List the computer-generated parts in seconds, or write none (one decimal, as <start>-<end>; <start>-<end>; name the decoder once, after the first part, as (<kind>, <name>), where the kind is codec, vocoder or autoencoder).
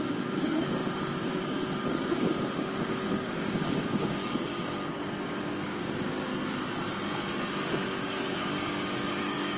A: 0.0-6.3 (codec, DAC); 7.8-9.6